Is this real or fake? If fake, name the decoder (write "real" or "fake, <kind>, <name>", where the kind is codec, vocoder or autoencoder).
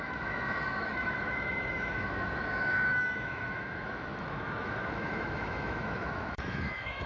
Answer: fake, autoencoder, DAC-VAE